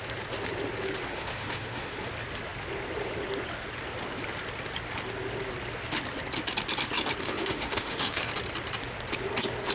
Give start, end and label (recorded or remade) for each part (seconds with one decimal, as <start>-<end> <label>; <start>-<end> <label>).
0.0-1.1 recorded; 1.1-2.0 remade; 2.0-7.2 recorded; 7.2-8.3 remade; 8.3-9.7 recorded